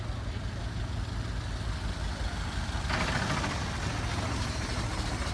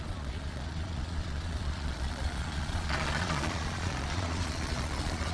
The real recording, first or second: first